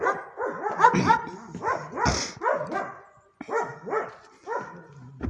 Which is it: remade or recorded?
recorded